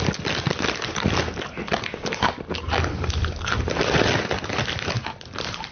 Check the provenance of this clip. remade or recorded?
recorded